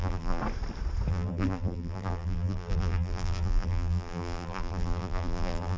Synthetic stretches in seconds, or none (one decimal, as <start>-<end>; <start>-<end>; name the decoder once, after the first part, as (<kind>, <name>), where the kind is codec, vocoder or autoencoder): 0.0-0.4 (vocoder, BigVGAN v2); 1.1-5.8